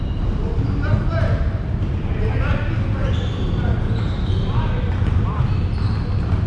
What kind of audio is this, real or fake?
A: real